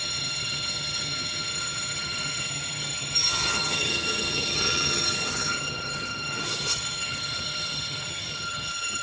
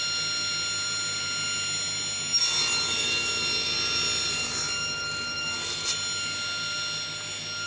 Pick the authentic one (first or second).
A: second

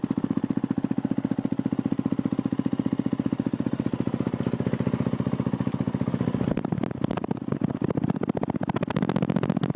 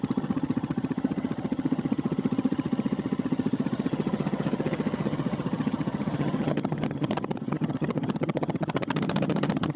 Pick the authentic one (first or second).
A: first